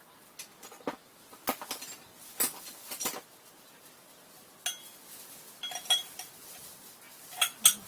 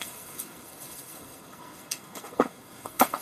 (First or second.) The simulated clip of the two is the second